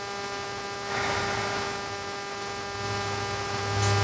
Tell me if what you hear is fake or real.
real